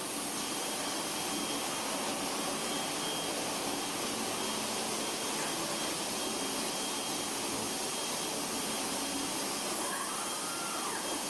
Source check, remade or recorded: recorded